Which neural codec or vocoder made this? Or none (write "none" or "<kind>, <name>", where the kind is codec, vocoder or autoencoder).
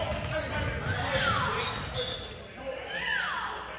none